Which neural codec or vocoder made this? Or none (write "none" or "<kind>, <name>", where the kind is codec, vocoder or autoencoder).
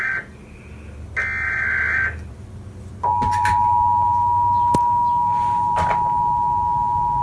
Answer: none